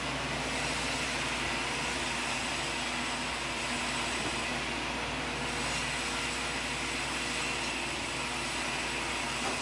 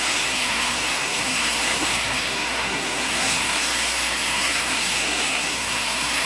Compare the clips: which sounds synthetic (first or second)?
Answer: second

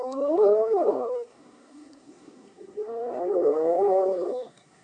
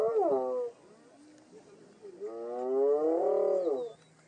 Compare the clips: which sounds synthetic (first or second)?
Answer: first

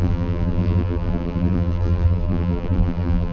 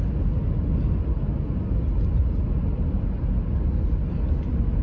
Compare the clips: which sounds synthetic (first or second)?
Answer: first